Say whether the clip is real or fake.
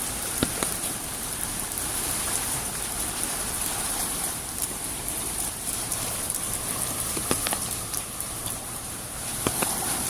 fake